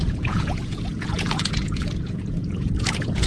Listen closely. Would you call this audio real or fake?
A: fake